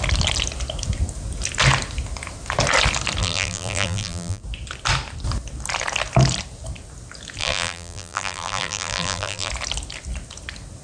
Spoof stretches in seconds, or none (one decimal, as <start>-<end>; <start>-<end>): 3.2-4.4; 7.4-9.5